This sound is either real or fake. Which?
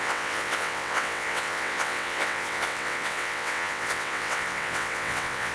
fake